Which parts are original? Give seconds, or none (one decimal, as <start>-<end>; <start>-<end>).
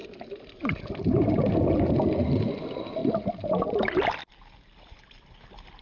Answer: 0.0-5.8